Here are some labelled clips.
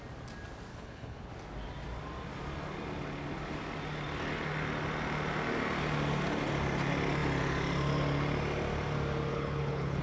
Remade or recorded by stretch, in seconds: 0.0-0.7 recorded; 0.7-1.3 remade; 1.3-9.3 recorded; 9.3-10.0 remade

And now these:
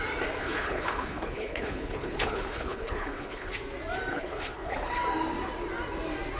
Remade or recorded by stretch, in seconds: 0.0-0.4 recorded; 0.4-3.5 remade; 3.5-4.1 recorded; 4.1-4.9 remade; 4.9-6.4 recorded